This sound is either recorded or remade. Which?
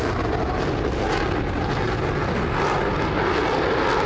recorded